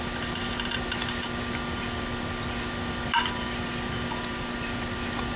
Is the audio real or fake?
real